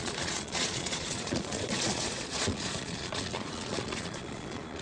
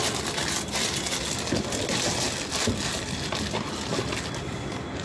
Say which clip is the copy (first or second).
first